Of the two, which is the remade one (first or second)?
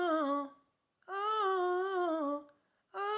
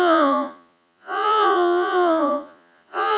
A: second